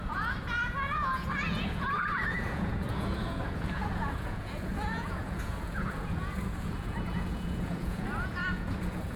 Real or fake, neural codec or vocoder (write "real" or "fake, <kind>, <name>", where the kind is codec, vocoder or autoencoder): fake, vocoder, Vocos